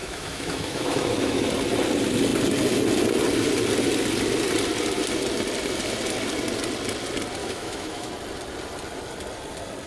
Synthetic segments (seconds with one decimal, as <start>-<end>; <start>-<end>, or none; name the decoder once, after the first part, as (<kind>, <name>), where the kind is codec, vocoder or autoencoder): 0.0-1.5 (autoencoder, DAC-VAE); 7.4-8.1